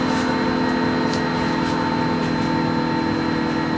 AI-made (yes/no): no